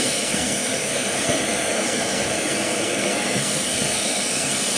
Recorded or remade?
remade